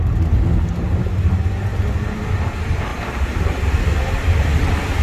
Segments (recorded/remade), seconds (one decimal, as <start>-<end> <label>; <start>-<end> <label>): 0.0-2.9 recorded; 2.9-4.6 remade; 4.6-5.0 recorded